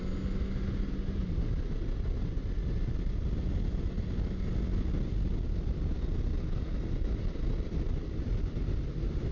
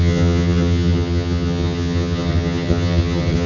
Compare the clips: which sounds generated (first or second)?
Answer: second